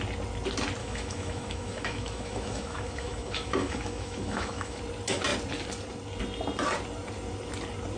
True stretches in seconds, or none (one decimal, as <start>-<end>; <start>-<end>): 0.0-0.8; 4.8-8.0